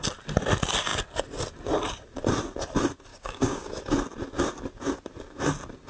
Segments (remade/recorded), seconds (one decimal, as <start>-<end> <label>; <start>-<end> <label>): 0.0-3.1 recorded; 3.1-3.8 remade; 3.8-5.9 recorded